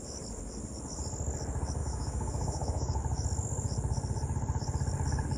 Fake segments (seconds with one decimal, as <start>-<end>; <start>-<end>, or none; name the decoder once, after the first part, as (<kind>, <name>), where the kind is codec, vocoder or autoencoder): 1.8-3.0 (autoencoder, DAC-VAE)